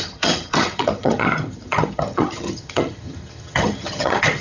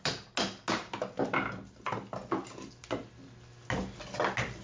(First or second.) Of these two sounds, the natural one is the second